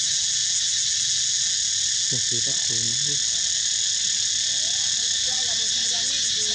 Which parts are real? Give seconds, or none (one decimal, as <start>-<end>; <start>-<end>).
0.0-6.5